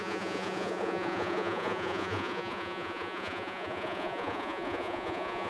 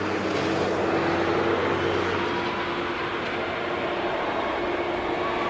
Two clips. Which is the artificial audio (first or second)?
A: first